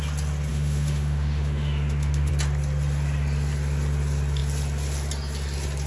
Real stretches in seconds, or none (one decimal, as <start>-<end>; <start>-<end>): 0.0-0.5; 2.3-5.9